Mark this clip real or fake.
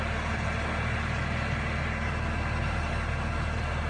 real